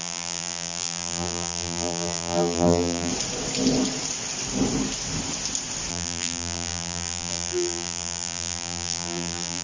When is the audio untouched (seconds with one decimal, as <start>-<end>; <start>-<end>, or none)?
3.1-5.9